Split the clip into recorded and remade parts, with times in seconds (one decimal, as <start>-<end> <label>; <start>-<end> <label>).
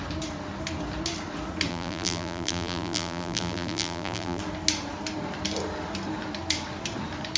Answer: 0.0-1.7 recorded; 1.7-4.4 remade; 4.4-7.4 recorded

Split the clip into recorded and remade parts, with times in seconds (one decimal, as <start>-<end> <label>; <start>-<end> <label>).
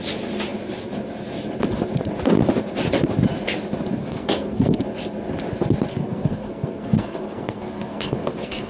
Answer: 0.0-4.0 recorded; 4.0-4.8 remade; 4.8-5.9 recorded; 5.9-8.7 remade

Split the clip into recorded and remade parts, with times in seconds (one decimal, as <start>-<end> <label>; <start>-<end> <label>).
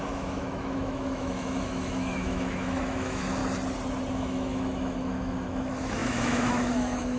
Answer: 0.0-3.4 remade; 3.4-4.1 recorded; 4.1-7.2 remade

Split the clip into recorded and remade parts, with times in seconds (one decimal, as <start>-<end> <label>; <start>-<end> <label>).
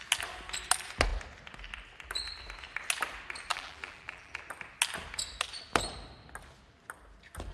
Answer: 0.0-3.5 recorded; 3.5-4.4 remade; 4.4-7.5 recorded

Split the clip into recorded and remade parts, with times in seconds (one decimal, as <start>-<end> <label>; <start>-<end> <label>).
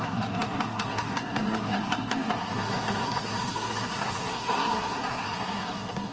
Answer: 0.0-6.1 remade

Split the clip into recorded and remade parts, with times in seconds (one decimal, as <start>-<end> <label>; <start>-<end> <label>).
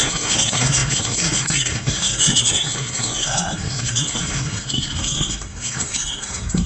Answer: 0.0-6.7 remade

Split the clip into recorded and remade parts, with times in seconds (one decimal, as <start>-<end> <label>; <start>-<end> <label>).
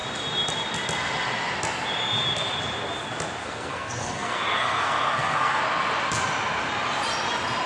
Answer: 0.0-3.4 recorded; 3.4-5.6 remade; 5.6-7.7 recorded